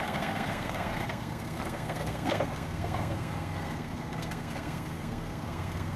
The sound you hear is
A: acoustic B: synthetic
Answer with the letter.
B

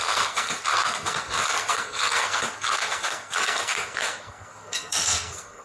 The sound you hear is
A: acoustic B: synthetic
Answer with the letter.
B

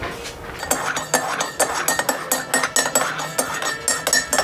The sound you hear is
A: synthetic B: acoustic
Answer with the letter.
B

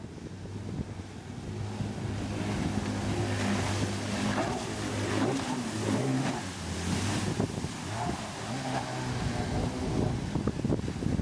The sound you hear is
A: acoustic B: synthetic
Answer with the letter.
A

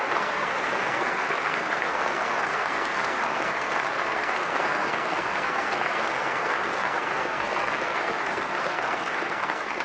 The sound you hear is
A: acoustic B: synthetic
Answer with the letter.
B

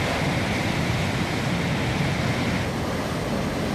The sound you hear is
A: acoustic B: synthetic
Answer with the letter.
A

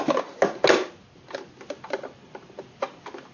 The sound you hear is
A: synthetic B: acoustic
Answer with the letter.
B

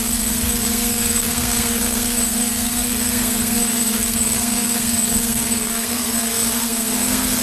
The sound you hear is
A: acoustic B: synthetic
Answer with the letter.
B